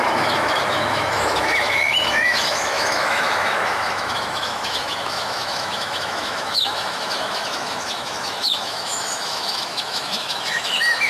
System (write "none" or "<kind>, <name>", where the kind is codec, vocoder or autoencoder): autoencoder, DAC-VAE